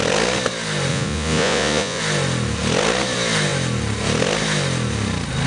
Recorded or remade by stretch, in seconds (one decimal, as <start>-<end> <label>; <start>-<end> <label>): 0.0-0.9 recorded; 0.9-2.0 remade; 2.0-5.5 recorded